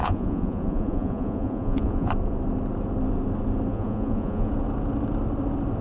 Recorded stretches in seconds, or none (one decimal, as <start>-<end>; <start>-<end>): 2.1-3.7; 4.5-5.8